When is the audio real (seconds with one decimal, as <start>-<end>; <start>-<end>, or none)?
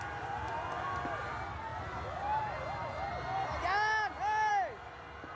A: 0.0-5.4